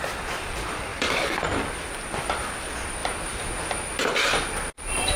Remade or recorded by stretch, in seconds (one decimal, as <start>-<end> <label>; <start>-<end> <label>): 0.0-5.2 remade